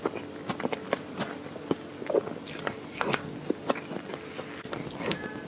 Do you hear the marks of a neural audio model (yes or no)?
no